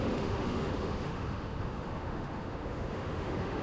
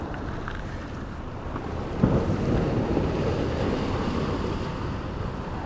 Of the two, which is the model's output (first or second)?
first